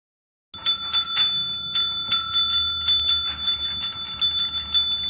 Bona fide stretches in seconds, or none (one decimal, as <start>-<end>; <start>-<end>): 0.0-5.1